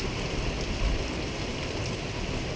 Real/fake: real